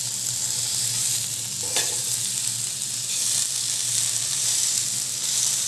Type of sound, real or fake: real